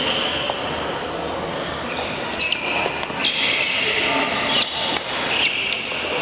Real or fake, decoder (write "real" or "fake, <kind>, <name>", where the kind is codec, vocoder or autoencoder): real